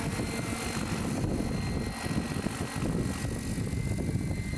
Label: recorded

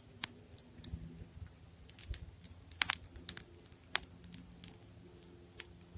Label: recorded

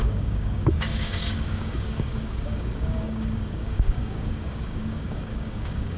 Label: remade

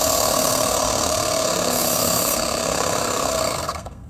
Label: remade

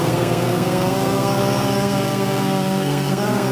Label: remade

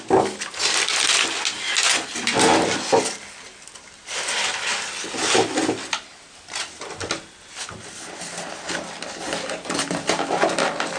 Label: recorded